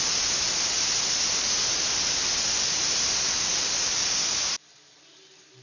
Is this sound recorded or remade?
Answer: recorded